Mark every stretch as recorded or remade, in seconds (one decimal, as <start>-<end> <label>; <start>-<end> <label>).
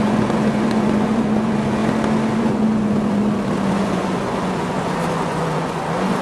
0.0-1.8 remade; 1.8-2.4 recorded; 2.4-3.2 remade; 3.2-3.7 recorded; 3.7-6.2 remade